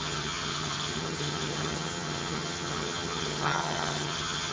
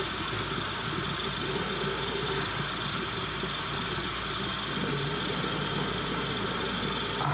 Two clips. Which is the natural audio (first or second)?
second